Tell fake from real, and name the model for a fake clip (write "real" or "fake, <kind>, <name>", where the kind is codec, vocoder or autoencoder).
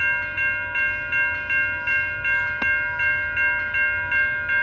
real